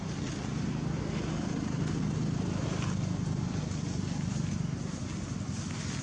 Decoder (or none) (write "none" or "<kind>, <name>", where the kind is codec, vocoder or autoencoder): none